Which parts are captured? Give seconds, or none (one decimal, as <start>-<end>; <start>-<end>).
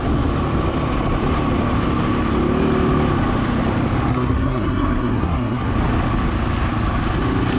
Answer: 0.0-4.1; 5.7-7.6